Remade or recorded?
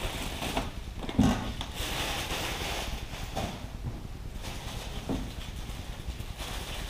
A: recorded